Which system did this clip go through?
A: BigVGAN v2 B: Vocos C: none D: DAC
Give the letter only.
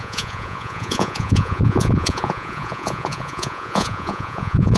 B